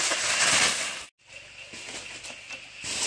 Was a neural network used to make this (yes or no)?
no